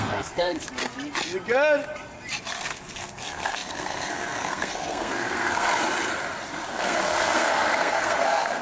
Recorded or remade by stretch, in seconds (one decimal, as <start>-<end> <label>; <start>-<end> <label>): 0.0-0.7 remade; 0.7-2.6 recorded; 2.6-5.7 remade; 5.7-6.5 recorded; 6.5-8.6 remade